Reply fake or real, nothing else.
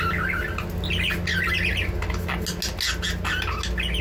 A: real